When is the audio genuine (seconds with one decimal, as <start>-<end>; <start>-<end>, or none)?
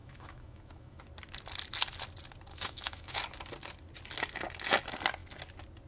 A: 1.0-2.5; 3.2-5.9